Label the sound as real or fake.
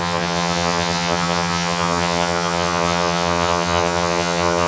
fake